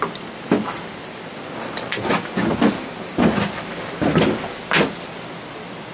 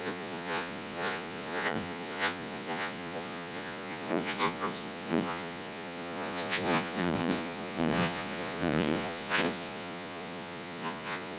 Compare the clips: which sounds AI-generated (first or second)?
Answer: second